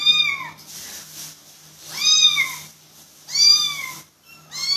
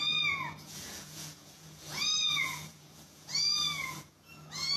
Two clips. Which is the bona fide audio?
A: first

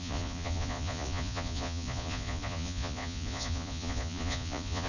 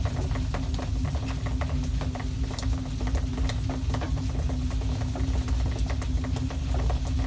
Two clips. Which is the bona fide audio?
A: second